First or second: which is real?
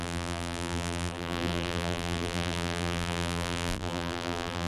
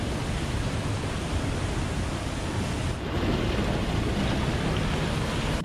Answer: second